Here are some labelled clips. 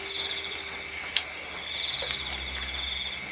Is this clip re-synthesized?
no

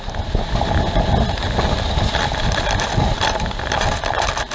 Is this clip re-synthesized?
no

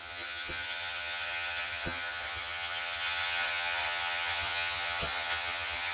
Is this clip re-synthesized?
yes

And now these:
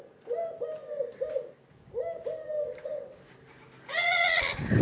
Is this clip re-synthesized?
no